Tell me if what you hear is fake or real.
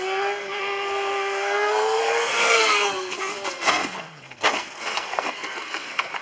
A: fake